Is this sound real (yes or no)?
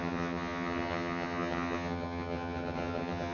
no